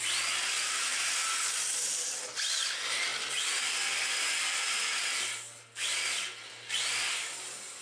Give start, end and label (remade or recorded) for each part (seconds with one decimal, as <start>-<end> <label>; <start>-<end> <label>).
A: 0.0-7.8 recorded